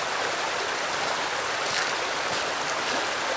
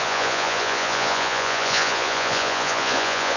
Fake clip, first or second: second